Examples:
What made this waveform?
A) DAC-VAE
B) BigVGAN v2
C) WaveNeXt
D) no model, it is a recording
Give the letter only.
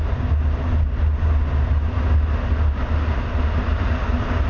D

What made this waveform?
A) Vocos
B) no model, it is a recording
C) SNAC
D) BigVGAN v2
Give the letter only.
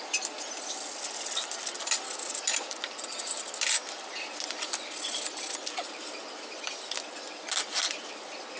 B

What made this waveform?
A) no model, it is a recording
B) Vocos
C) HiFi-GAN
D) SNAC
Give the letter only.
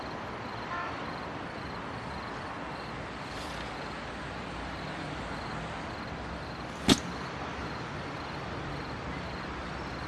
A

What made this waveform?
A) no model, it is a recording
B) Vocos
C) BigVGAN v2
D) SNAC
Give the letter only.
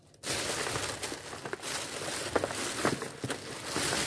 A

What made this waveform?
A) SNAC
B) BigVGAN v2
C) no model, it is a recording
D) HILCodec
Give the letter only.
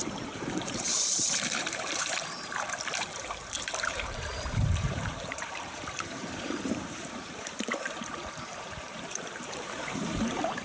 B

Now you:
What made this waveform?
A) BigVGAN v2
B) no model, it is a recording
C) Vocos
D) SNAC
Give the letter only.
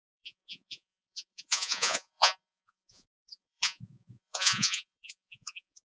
C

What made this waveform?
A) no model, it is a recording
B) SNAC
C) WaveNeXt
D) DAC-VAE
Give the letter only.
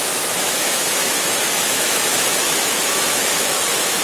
D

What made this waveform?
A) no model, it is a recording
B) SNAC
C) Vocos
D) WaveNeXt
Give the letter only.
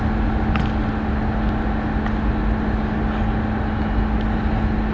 A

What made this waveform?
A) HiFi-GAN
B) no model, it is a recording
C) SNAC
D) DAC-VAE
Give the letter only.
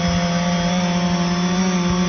B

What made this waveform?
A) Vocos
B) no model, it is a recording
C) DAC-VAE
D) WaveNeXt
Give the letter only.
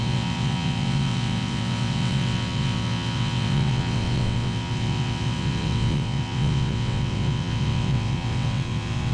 D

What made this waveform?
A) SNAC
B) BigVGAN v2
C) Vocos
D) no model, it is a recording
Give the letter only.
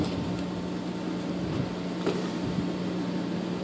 D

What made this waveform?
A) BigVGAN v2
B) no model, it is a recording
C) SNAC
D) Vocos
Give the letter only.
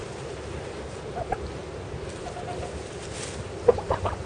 B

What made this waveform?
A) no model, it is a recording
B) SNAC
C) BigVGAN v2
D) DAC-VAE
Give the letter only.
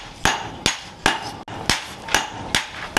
A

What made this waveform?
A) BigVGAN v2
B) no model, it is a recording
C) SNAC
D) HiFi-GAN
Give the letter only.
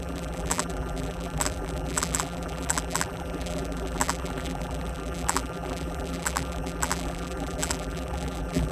A